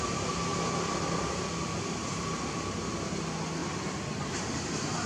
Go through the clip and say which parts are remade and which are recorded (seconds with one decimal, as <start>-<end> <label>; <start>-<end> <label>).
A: 0.0-3.6 recorded; 3.6-5.1 remade